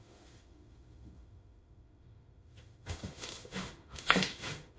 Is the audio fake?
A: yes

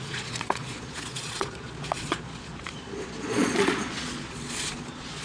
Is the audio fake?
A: yes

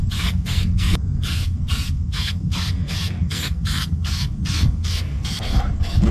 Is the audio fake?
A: yes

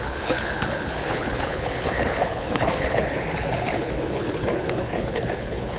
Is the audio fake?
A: yes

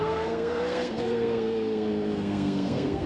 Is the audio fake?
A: yes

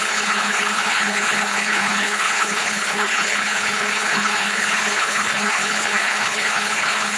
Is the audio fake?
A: yes